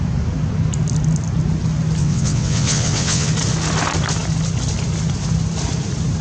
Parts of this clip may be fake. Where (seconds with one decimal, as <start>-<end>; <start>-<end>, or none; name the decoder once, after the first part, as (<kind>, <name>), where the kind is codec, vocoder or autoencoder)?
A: 2.0-3.3 (vocoder, WaveNeXt)